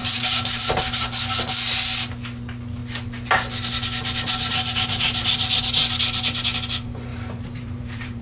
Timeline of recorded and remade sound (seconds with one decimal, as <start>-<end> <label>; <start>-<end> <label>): 0.0-0.6 remade; 0.6-7.1 recorded; 7.1-8.2 remade